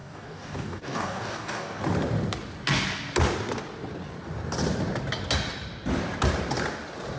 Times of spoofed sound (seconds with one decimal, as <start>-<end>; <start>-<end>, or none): 0.0-1.8